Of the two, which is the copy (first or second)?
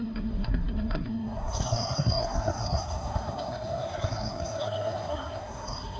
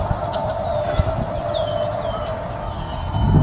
first